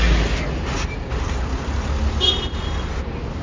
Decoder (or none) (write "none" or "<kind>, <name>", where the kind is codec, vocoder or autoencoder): none